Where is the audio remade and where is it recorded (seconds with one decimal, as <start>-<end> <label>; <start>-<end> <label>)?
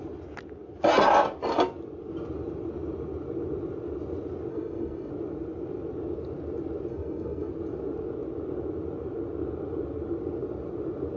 0.0-4.5 recorded; 4.5-5.1 remade; 5.1-6.9 recorded; 6.9-7.5 remade; 7.5-11.2 recorded